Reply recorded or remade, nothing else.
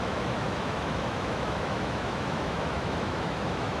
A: remade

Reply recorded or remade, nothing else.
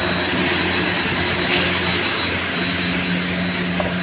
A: recorded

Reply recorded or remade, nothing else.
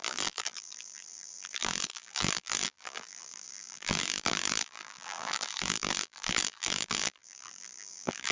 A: remade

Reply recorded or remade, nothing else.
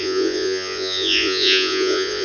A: remade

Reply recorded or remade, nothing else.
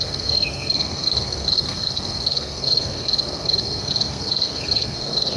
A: remade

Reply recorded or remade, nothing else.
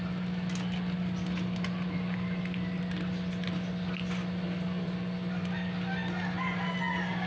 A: recorded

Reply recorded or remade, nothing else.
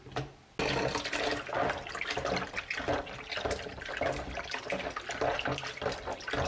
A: recorded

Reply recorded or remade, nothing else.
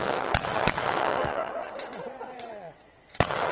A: remade